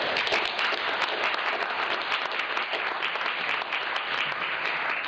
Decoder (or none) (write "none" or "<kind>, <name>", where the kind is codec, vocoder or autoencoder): none